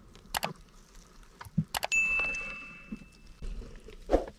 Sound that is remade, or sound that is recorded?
recorded